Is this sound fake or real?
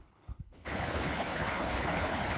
fake